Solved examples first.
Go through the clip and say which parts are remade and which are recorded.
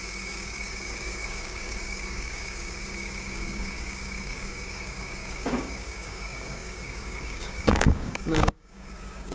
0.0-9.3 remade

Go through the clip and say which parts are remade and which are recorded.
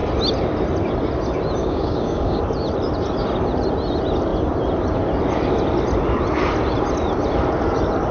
0.0-1.6 recorded; 1.6-2.4 remade; 2.4-8.1 recorded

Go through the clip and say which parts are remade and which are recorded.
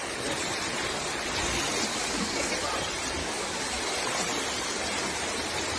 0.0-1.9 recorded; 1.9-2.5 remade; 2.5-3.2 recorded; 3.2-3.8 remade; 3.8-5.8 recorded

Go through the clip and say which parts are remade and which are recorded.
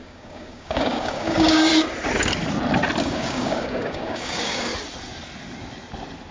0.0-1.7 remade; 1.7-3.0 recorded; 3.0-4.7 remade; 4.7-6.3 recorded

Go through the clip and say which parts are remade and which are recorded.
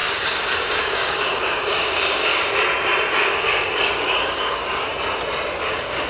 0.0-2.3 remade; 2.3-3.1 recorded; 3.1-4.9 remade; 4.9-5.6 recorded; 5.6-6.1 remade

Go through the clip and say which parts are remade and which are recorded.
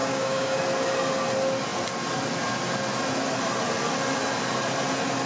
0.0-0.6 remade; 0.6-5.3 recorded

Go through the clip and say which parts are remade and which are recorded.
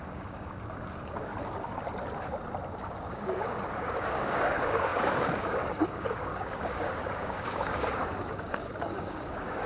0.0-1.3 remade; 1.3-2.7 recorded; 2.7-9.7 remade